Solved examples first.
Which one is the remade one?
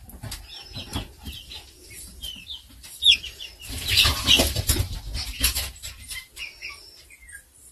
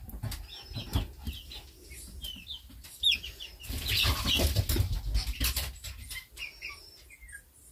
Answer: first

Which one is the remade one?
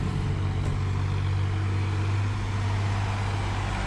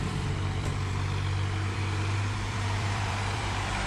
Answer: second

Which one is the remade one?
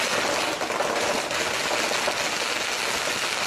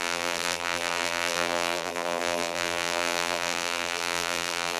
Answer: second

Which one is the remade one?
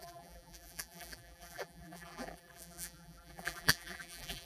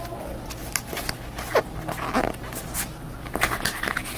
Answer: first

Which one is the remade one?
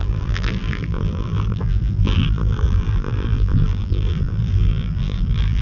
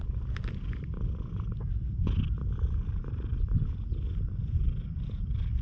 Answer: first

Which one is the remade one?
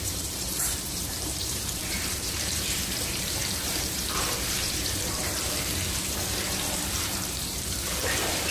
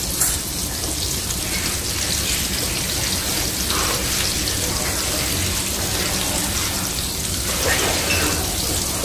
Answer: first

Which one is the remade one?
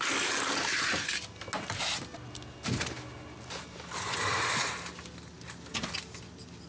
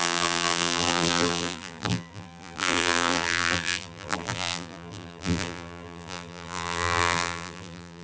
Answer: second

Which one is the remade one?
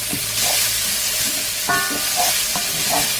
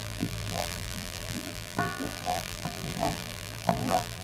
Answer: second